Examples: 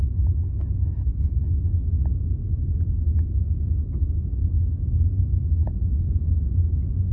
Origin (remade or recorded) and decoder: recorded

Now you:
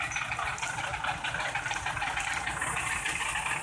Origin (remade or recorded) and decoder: recorded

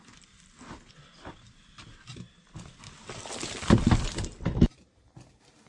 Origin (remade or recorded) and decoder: recorded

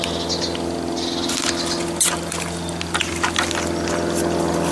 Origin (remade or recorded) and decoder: recorded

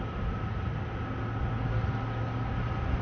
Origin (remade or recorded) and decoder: recorded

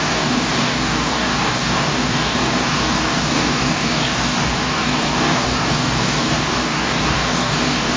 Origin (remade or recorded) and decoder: remade, codec, DAC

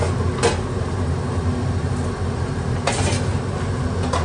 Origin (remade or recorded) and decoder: recorded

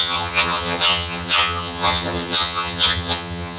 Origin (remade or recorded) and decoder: remade, vocoder, HiFi-GAN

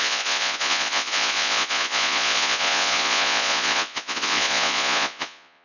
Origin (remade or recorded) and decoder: remade, vocoder, Vocos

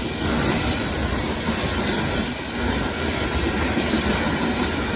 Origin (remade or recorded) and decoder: recorded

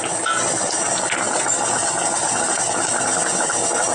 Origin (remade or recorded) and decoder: recorded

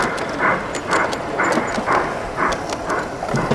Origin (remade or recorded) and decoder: recorded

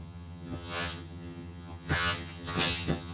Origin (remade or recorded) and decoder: remade, vocoder, HiFi-GAN